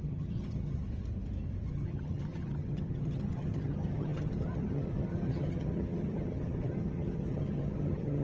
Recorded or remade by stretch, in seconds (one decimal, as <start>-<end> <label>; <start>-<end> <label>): 0.0-0.8 remade; 0.8-1.7 recorded; 1.7-8.2 remade